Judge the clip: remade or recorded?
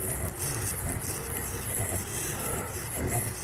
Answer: recorded